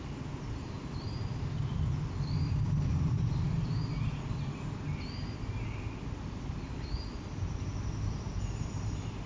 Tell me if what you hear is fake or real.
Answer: real